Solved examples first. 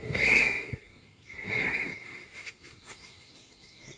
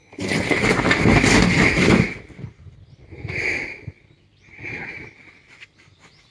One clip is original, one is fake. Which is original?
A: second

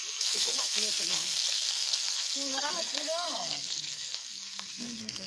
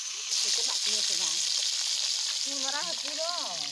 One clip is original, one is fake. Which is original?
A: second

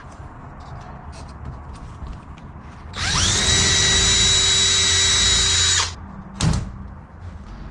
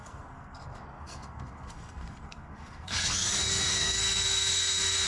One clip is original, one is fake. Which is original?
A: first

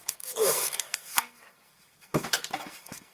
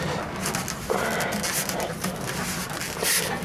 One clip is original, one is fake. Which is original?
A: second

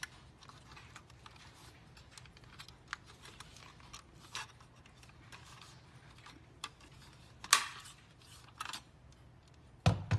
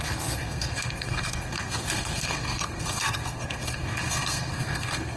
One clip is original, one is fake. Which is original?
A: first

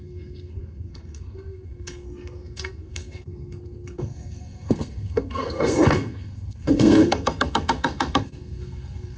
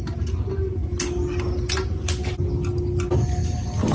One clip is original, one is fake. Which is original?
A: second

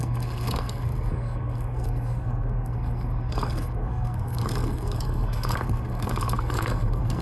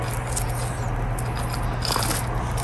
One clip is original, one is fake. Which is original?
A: second